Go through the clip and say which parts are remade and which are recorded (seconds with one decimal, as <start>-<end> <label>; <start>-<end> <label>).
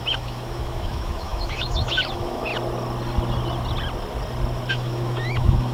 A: 0.0-2.5 remade; 2.5-4.7 recorded; 4.7-5.7 remade